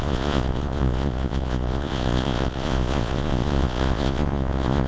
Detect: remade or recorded remade